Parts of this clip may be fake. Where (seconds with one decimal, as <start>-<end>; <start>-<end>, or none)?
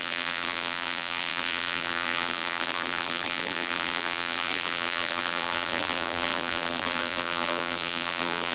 0.0-8.5